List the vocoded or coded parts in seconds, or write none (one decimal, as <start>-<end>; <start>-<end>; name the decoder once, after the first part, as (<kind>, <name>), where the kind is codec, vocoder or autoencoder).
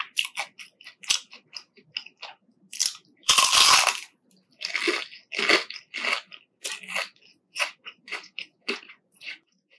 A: 7.3-9.8 (vocoder, Vocos)